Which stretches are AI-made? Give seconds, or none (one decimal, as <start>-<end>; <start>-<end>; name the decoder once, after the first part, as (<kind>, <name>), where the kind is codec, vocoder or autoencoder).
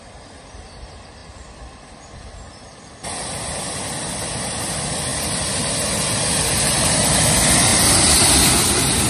1.2-3.8 (vocoder, BigVGAN v2); 5.1-5.8; 7.7-8.5